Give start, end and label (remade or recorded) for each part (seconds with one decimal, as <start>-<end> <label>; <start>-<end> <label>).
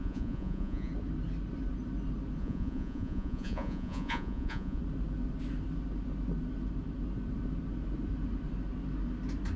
0.0-0.9 remade; 0.9-2.4 recorded; 2.4-4.8 remade; 4.8-9.6 recorded